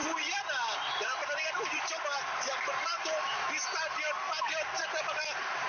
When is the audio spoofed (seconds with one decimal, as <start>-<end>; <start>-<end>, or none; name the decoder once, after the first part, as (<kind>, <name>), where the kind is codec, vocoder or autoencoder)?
0.0-3.4 (vocoder, BigVGAN v2)